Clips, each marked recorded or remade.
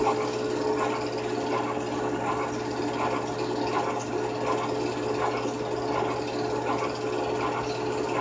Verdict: recorded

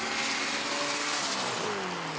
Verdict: recorded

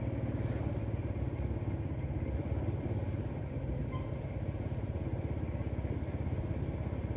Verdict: recorded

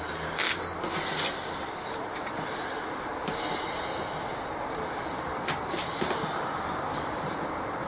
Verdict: recorded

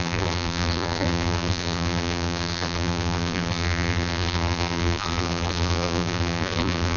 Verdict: remade